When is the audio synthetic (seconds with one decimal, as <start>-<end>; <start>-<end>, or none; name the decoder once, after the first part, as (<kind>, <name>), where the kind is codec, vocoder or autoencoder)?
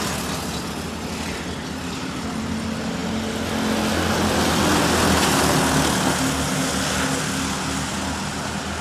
none